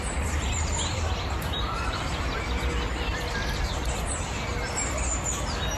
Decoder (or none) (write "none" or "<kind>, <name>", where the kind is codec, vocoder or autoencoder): vocoder, BigVGAN v2